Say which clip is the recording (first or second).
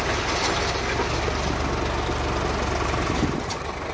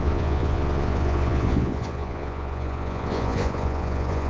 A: first